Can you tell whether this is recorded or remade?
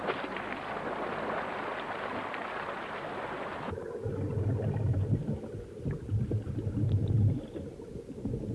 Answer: recorded